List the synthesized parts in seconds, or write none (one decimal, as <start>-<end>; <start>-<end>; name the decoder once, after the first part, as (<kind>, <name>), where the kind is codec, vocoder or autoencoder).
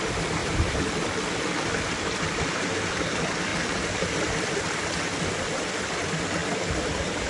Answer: 0.4-2.5 (vocoder, BigVGAN v2); 3.5-4.6; 6.4-7.3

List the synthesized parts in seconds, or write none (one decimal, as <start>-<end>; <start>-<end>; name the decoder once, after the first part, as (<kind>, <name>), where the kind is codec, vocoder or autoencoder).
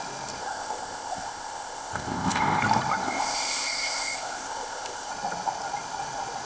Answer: 0.4-2.6 (codec, ZipCodec); 3.0-5.1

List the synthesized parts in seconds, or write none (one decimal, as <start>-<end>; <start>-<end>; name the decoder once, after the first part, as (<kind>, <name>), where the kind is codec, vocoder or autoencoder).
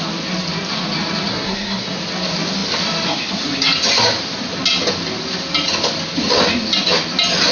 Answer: 1.3-2.0 (codec, SNAC)